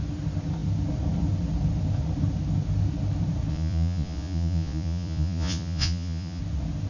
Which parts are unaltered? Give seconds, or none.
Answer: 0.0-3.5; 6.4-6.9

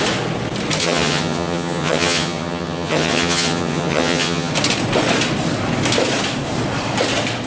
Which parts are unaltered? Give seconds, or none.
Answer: 0.0-0.8; 4.5-7.5